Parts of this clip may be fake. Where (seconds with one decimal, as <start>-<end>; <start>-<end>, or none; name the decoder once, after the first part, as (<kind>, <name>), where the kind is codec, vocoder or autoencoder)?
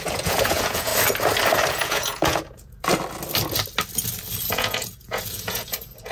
0.0-0.9 (vocoder, Vocos); 1.7-2.9; 4.5-6.1